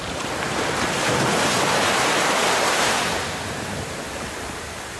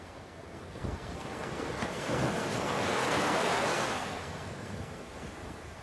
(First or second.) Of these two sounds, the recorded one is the first